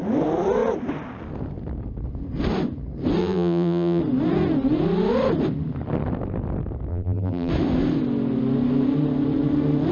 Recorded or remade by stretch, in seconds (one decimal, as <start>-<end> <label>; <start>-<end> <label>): 0.0-3.2 recorded; 3.2-4.0 remade; 4.0-6.9 recorded; 6.9-7.5 remade; 7.5-9.9 recorded